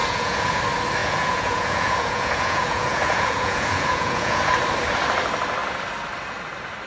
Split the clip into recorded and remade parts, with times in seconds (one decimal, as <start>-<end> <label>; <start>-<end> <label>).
0.0-0.6 remade; 0.6-1.0 recorded; 1.0-4.5 remade; 4.5-6.9 recorded